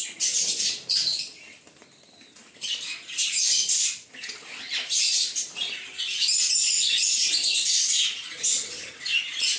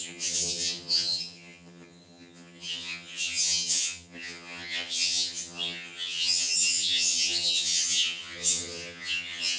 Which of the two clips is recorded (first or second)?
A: first